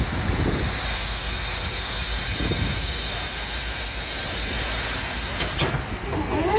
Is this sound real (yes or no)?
yes